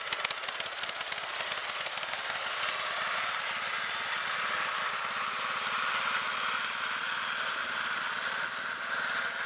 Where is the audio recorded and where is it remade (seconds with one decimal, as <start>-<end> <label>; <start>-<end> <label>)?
0.0-9.5 recorded

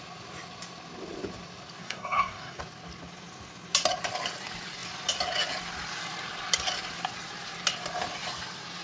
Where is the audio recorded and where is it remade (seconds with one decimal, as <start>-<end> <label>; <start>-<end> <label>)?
0.0-1.8 recorded; 1.8-2.6 remade; 2.6-8.8 recorded

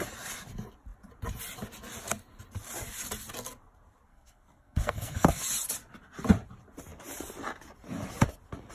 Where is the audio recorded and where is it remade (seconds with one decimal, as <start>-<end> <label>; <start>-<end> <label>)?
0.0-4.1 recorded; 4.1-5.4 remade; 5.4-8.7 recorded

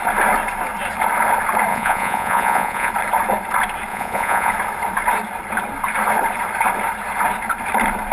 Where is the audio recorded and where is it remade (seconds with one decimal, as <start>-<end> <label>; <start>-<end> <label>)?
0.0-1.7 recorded; 1.7-2.9 remade; 2.9-3.9 recorded; 3.9-4.5 remade; 4.5-8.1 recorded

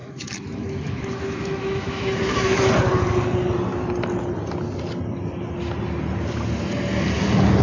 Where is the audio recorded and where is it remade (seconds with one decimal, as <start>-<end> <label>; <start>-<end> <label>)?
0.0-2.7 remade; 2.7-7.6 recorded

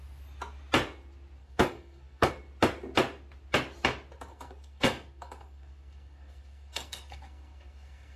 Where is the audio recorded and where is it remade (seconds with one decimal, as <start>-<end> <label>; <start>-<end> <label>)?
0.0-1.4 recorded; 1.4-2.3 remade; 2.3-4.3 recorded; 4.3-8.2 remade

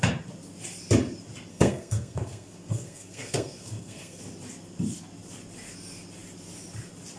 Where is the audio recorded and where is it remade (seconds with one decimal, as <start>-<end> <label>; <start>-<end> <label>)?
0.0-1.5 recorded; 1.5-4.2 remade; 4.2-7.2 recorded

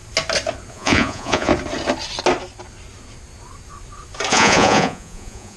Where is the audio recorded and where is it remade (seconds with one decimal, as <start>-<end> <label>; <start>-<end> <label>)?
0.0-0.7 recorded; 0.7-1.5 remade; 1.5-4.3 recorded; 4.3-5.6 remade